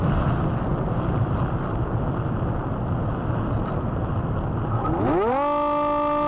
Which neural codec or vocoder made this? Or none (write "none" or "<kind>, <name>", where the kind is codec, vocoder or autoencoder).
none